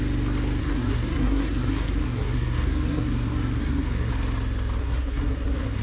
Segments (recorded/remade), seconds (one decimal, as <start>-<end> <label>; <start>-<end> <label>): 0.0-0.6 recorded; 0.6-4.1 remade; 4.1-4.8 recorded; 4.8-5.8 remade